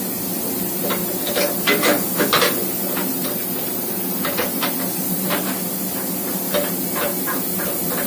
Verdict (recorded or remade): recorded